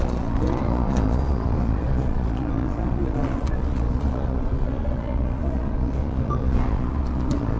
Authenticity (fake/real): fake